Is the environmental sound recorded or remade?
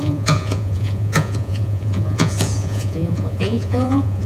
remade